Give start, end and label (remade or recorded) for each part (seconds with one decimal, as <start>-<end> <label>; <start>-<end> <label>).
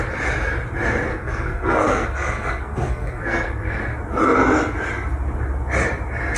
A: 0.0-1.1 recorded; 1.1-3.8 remade; 3.8-6.4 recorded